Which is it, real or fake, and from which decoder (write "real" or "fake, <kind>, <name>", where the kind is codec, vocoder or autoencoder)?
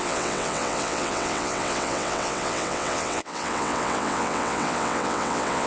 fake, vocoder, WaveNeXt